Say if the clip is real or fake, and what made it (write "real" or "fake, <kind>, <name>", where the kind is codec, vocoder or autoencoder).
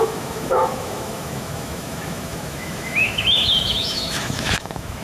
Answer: fake, autoencoder, DAC-VAE